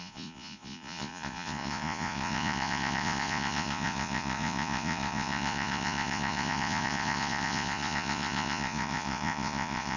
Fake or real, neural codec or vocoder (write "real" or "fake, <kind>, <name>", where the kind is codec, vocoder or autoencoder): fake, vocoder, Vocos